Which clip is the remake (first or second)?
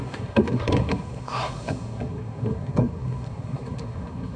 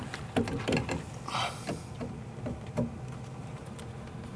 first